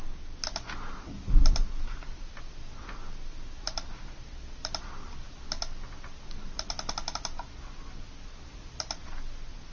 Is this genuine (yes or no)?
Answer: yes